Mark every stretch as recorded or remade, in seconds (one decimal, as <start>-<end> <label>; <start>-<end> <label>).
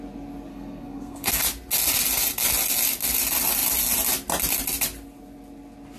0.0-0.5 recorded; 0.5-1.4 remade; 1.4-6.0 recorded